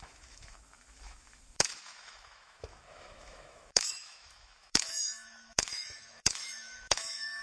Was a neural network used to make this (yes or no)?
yes